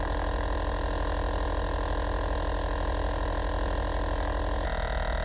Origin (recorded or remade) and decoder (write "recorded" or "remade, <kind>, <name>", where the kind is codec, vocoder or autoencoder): recorded